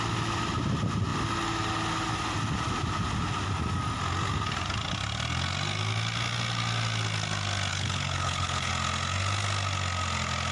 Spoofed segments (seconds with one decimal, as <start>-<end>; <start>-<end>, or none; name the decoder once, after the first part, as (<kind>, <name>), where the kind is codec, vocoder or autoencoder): 7.7-8.7 (codec, HILCodec)